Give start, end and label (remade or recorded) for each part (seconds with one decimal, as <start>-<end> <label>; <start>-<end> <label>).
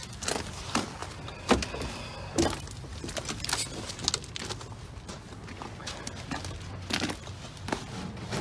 0.0-8.4 recorded